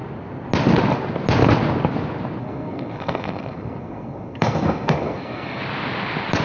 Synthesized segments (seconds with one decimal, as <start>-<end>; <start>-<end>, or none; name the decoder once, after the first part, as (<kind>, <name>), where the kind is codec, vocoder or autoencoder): 2.4-5.6 (codec, SNAC)